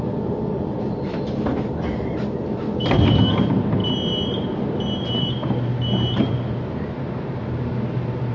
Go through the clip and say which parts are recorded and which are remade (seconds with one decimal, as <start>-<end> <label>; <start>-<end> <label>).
0.0-8.3 remade